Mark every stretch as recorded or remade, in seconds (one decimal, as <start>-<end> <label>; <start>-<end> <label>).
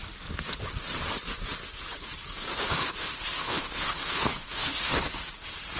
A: 0.0-1.6 recorded; 1.6-5.1 remade; 5.1-5.8 recorded